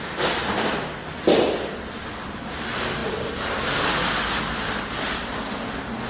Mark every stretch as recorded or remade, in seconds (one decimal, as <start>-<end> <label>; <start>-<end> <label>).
0.0-1.1 remade; 1.1-2.0 recorded; 2.0-6.1 remade